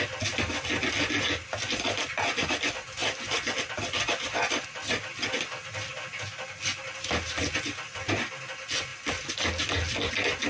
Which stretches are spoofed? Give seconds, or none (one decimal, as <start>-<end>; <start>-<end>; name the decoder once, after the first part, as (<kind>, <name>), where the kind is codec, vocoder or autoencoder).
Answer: none